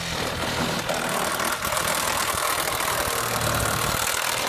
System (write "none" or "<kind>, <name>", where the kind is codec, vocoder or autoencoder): none